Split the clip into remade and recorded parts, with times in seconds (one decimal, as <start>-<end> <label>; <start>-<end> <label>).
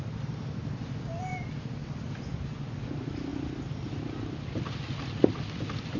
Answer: 0.0-6.0 recorded